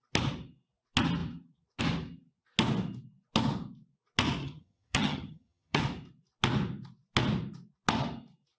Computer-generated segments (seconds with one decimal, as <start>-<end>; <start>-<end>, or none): 4.4-5.8